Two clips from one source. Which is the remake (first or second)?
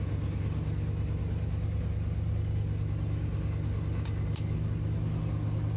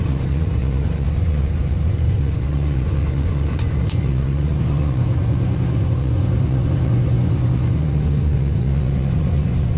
second